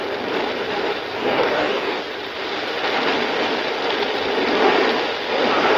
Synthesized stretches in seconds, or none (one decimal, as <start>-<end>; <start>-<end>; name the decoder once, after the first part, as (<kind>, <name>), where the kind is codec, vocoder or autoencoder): 1.2-2.0 (codec, DAC)